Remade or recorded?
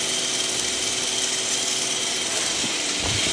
recorded